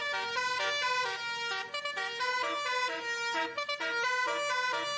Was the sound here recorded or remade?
recorded